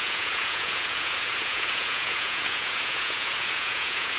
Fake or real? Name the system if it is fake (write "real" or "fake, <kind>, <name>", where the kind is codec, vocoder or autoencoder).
fake, vocoder, Vocos